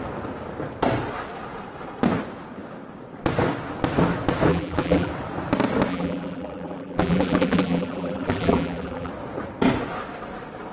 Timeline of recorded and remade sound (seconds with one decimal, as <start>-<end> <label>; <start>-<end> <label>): 0.0-4.5 recorded; 4.5-5.1 remade; 5.1-5.9 recorded; 5.9-9.1 remade; 9.1-10.7 recorded